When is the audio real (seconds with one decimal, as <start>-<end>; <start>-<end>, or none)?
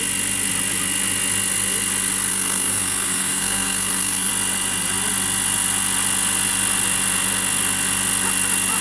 0.0-2.3; 4.3-8.8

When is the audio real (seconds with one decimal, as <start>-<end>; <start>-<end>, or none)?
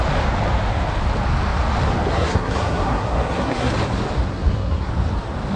0.0-2.1; 3.7-4.3; 4.9-5.6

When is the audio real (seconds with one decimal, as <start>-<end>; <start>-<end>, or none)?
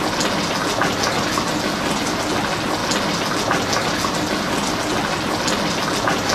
0.0-6.3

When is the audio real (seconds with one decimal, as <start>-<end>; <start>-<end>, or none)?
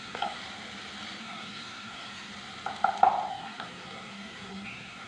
0.4-1.2; 2.3-3.3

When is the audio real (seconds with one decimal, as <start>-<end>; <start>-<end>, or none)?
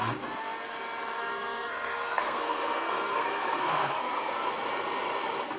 0.0-1.2; 4.3-5.6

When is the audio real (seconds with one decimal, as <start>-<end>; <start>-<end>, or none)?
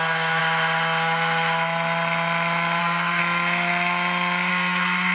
0.4-2.8; 3.2-4.5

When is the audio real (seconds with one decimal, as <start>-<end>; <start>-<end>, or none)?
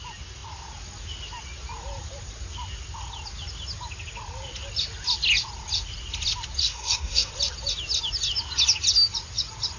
0.0-6.6; 7.3-9.8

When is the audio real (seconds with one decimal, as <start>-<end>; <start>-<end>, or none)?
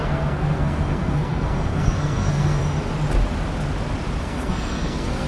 2.6-4.2